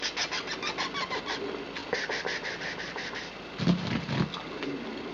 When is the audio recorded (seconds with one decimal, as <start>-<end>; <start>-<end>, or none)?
0.0-5.1